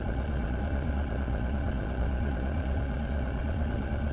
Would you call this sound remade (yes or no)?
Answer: yes